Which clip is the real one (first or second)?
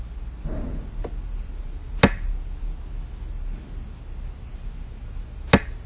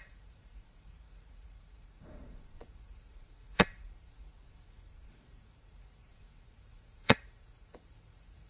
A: first